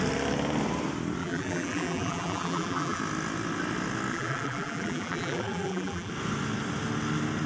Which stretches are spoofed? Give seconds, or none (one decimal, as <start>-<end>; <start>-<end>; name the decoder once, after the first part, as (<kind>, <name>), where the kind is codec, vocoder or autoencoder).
1.2-3.0 (vocoder, BigVGAN v2); 4.1-6.1

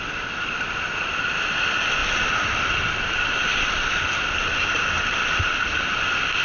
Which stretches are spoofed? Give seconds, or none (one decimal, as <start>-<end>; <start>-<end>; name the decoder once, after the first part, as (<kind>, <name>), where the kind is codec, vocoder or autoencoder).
none

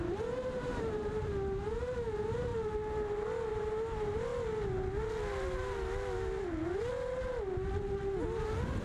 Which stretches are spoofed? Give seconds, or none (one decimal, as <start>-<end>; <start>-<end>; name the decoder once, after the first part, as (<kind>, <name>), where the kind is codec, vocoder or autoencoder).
0.0-2.5 (vocoder, BigVGAN v2); 3.5-4.3

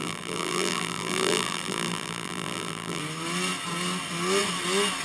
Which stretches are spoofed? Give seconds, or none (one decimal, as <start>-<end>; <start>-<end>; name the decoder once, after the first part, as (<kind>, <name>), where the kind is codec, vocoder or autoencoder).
0.0-3.0 (vocoder, BigVGAN v2)

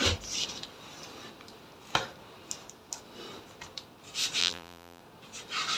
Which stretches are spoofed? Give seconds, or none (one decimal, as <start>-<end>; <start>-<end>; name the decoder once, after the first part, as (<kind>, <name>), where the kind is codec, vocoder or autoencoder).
4.4-5.0 (vocoder, BigVGAN v2)

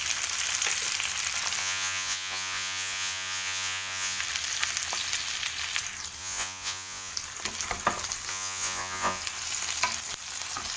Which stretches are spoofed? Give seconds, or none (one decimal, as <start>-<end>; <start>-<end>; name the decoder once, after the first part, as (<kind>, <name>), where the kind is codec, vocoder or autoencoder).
1.6-4.2 (vocoder, Vocos); 6.2-7.1; 8.3-9.2

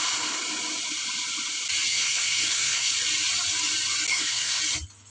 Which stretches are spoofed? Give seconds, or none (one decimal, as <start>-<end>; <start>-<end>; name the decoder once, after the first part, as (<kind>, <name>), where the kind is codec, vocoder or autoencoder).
1.9-2.9 (codec, SNAC); 4.1-4.6

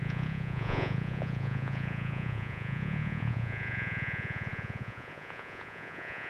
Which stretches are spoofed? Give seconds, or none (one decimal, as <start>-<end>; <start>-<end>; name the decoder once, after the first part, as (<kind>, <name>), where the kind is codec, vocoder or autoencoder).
0.0-6.3 (vocoder, Vocos)